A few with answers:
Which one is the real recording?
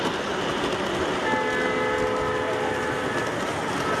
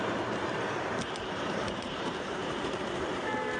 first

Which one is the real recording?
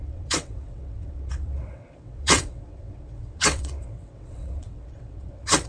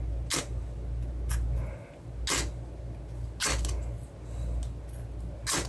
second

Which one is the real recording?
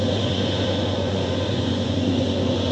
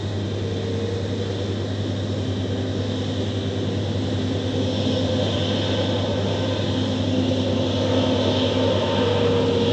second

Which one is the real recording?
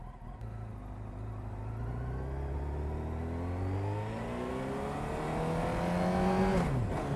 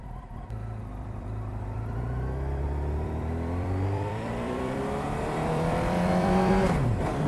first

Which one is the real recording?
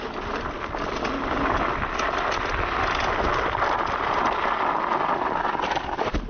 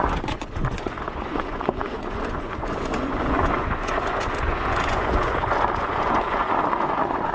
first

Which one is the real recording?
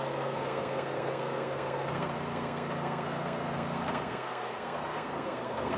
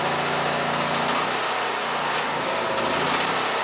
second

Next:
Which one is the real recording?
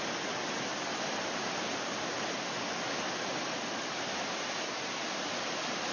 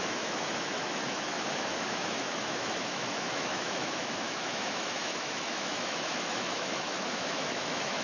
first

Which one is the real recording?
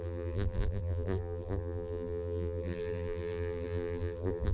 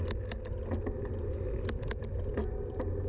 second